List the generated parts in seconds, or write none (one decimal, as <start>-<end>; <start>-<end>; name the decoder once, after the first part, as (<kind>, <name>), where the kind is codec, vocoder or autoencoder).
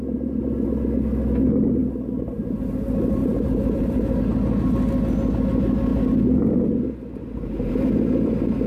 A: 3.2-4.2 (vocoder, BigVGAN v2)